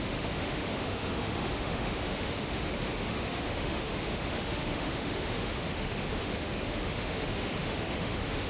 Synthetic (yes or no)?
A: yes